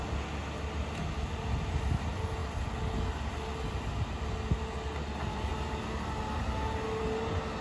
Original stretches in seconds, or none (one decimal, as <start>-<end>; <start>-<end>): 0.0-7.6